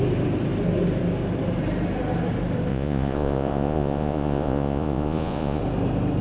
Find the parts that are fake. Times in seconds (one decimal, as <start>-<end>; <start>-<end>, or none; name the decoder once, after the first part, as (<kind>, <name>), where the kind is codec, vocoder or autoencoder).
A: 2.7-5.6 (vocoder, Vocos)